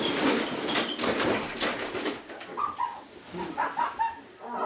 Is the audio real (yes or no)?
yes